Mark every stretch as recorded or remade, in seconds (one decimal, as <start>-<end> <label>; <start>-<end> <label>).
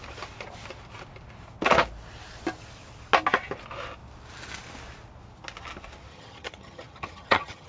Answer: 0.0-6.1 recorded; 6.1-7.7 remade